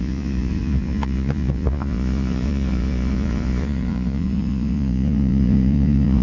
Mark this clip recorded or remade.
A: remade